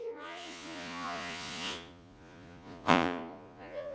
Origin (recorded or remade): remade